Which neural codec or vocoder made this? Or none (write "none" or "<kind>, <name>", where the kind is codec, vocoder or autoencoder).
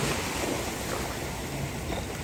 none